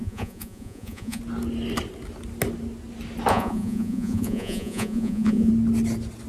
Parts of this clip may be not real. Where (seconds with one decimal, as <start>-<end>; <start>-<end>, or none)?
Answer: 0.0-1.2; 3.3-5.5

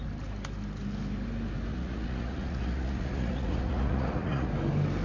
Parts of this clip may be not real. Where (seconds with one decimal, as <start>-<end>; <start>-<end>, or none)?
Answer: 1.7-4.5

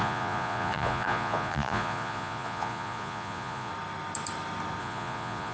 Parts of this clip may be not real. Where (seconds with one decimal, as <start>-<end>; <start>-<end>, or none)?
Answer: 0.0-3.7; 4.8-5.5

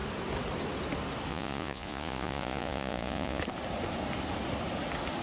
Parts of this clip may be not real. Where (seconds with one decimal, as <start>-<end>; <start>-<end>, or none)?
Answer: 1.3-3.4

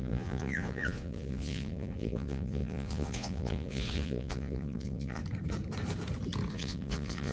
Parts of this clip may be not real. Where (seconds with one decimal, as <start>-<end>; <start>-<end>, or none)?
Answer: 0.0-5.2; 6.5-7.3

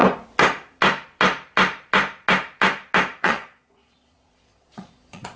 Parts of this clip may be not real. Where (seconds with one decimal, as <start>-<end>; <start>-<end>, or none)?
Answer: 3.2-5.4

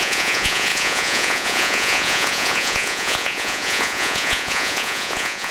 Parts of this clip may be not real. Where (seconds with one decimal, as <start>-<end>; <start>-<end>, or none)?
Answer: 0.0-5.5

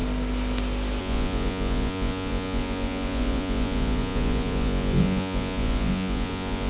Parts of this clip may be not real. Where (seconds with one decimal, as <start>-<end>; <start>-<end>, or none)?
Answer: 1.0-6.7